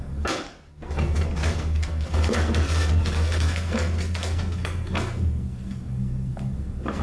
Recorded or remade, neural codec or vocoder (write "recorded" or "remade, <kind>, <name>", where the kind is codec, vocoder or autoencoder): remade, codec, SNAC